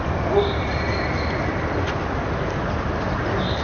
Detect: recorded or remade recorded